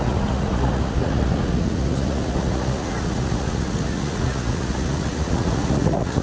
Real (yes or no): no